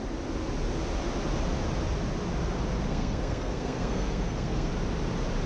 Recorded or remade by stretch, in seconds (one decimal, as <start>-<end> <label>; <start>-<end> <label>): 0.0-2.9 recorded; 2.9-4.7 remade; 4.7-5.5 recorded

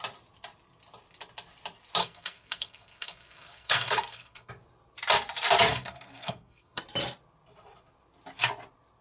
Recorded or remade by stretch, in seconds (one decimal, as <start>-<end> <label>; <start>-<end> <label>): 0.0-2.0 recorded; 2.0-4.5 remade; 4.5-5.7 recorded; 5.7-6.8 remade; 6.8-9.0 recorded

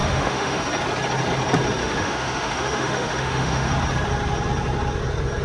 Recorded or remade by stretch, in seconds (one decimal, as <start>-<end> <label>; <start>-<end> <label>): 0.0-0.6 remade; 0.6-1.8 recorded; 1.8-3.7 remade; 3.7-5.4 recorded

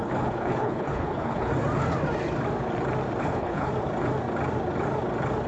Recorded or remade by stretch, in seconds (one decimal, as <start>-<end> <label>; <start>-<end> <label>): 0.0-1.5 remade; 1.5-3.2 recorded; 3.2-3.7 remade; 3.7-5.5 recorded

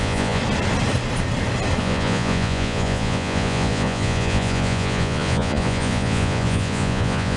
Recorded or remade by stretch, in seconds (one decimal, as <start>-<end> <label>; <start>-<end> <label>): 0.0-0.4 remade; 0.4-1.8 recorded; 1.8-7.4 remade